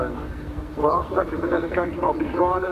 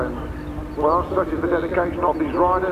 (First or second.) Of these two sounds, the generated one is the first